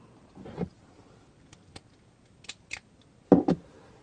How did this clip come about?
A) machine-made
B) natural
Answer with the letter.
B